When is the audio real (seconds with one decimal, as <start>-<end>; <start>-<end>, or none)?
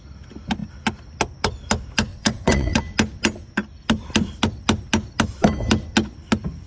0.0-2.1; 2.8-6.7